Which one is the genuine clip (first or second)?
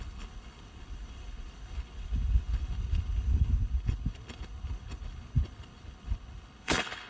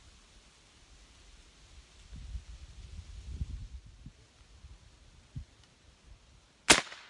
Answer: second